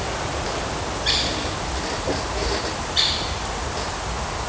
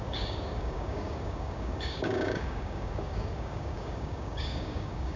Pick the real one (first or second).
first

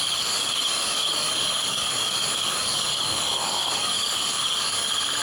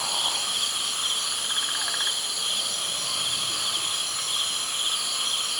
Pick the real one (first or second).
second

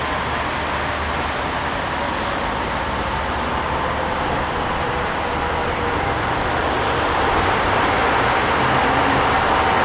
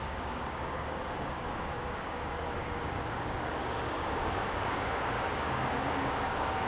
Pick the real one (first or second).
first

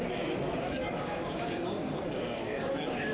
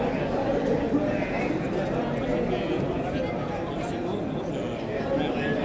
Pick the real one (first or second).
second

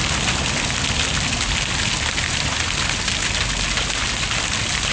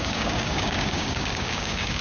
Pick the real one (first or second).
first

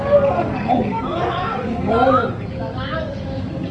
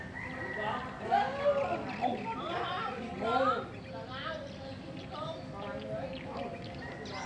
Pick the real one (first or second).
second